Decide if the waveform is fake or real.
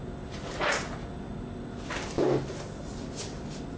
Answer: real